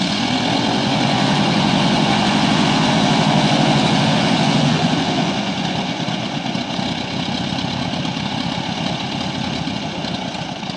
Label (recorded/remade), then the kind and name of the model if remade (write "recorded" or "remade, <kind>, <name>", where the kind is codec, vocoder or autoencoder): remade, vocoder, Vocos